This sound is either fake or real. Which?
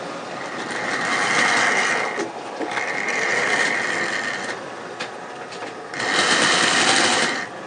real